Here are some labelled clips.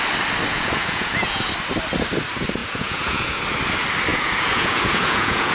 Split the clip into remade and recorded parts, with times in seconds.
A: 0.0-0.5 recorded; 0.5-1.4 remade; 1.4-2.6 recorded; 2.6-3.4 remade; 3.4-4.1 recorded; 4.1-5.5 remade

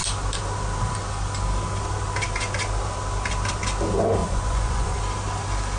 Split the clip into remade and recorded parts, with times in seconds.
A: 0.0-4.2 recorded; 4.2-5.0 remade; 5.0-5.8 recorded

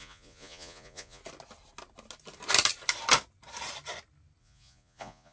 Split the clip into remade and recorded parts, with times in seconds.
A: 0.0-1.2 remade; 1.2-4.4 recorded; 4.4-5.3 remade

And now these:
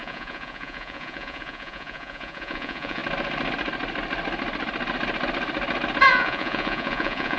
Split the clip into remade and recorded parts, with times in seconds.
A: 0.0-3.0 remade; 3.0-6.1 recorded; 6.1-7.4 remade

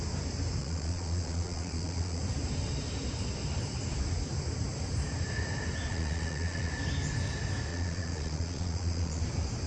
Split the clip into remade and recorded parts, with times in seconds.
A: 0.0-0.6 recorded; 0.6-2.2 remade; 2.2-5.9 recorded; 5.9-6.7 remade; 6.7-7.7 recorded; 7.7-9.2 remade; 9.2-9.7 recorded

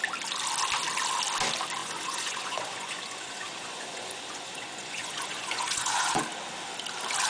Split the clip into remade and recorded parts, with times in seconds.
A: 0.0-1.8 recorded; 1.8-6.2 remade; 6.2-7.3 recorded

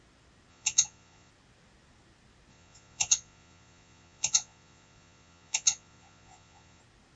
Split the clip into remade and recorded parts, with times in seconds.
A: 0.0-0.5 recorded; 0.5-1.3 remade; 1.3-2.5 recorded; 2.5-6.8 remade; 6.8-7.2 recorded